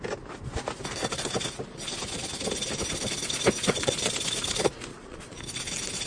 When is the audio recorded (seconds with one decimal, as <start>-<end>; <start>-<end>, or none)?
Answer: 0.0-3.6; 4.1-4.9; 5.4-6.1